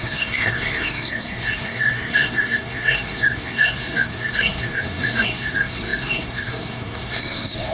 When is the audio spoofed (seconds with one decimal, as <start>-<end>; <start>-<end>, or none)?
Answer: 0.0-7.7